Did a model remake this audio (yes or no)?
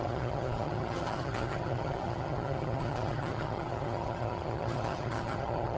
yes